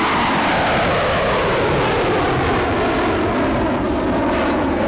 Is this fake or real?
real